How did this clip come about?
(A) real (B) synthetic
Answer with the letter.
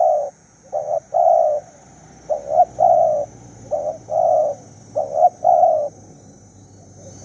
A